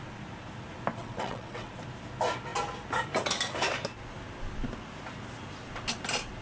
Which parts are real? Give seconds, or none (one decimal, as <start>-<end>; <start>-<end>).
0.0-1.0; 1.7-6.4